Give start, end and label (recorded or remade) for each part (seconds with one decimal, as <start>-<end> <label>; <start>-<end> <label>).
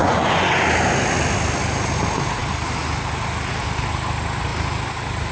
0.0-0.6 remade; 0.6-5.3 recorded